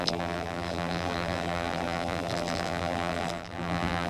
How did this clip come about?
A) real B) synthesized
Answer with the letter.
B